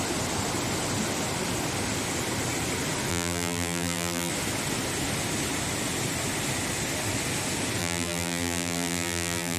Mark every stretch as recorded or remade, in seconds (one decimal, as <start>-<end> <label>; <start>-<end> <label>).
0.0-3.1 recorded; 3.1-4.3 remade; 4.3-7.8 recorded; 7.8-9.6 remade